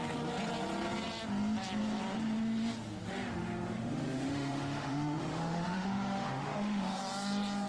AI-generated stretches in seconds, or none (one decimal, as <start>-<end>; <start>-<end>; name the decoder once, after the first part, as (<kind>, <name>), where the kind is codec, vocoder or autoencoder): 3.1-7.0 (autoencoder, DAC-VAE)